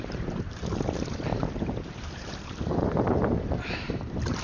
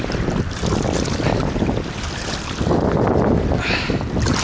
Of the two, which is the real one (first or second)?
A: second